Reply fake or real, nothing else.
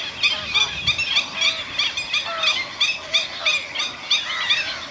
real